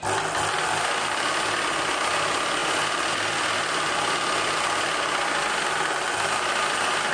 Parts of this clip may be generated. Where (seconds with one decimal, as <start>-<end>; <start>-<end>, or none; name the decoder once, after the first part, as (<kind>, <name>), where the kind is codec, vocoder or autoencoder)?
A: none

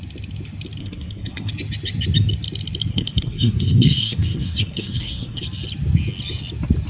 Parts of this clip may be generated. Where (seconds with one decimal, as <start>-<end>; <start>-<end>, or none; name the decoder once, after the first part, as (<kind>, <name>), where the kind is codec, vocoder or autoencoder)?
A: 0.8-1.5 (codec, SNAC); 2.9-5.4

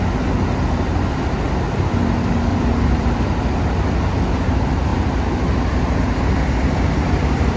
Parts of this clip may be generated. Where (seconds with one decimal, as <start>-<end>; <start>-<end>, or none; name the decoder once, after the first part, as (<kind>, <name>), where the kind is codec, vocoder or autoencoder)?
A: 2.5-3.1 (vocoder, BigVGAN v2)

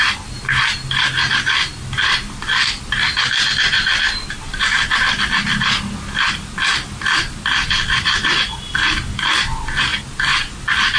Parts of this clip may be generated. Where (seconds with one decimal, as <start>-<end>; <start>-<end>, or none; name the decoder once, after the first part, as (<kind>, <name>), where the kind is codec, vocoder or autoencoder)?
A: none